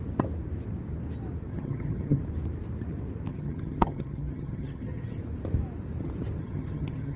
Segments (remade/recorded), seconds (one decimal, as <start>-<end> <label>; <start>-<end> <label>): 0.0-1.5 recorded; 1.5-2.2 remade; 2.2-3.3 recorded; 3.3-5.2 remade; 5.2-6.4 recorded; 6.4-7.2 remade